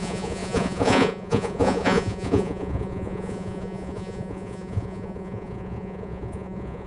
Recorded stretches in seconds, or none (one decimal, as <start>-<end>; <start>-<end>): none